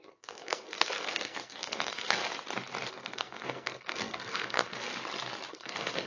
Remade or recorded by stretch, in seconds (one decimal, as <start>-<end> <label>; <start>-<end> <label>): 0.0-2.2 remade; 2.2-2.9 recorded; 2.9-4.9 remade; 4.9-5.5 recorded; 5.5-6.1 remade